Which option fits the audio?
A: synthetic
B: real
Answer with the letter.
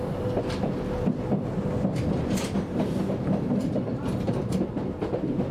B